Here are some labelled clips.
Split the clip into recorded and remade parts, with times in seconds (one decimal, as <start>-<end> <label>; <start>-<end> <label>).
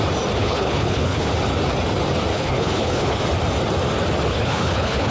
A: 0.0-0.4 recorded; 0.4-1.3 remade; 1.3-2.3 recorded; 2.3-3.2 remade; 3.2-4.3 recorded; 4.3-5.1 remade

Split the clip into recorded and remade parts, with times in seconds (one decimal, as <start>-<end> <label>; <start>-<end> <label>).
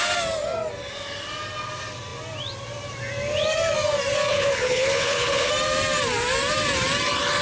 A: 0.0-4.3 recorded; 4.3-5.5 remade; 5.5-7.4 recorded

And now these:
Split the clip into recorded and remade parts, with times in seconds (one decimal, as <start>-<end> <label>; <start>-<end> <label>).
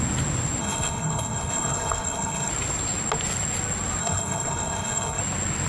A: 0.0-0.6 recorded; 0.6-2.5 remade; 2.5-4.0 recorded; 4.0-5.2 remade; 5.2-5.7 recorded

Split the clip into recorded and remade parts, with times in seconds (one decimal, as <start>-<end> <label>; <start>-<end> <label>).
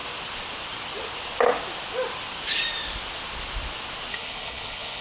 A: 0.0-4.1 recorded; 4.1-5.0 remade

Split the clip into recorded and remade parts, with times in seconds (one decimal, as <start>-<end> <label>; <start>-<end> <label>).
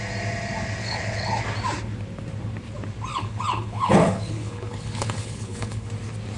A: 0.0-0.8 recorded; 0.8-1.4 remade; 1.4-3.1 recorded; 3.1-5.9 remade; 5.9-6.4 recorded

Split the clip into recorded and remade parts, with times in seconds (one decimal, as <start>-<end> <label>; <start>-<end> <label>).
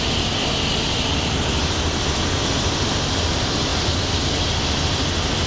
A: 0.0-5.5 recorded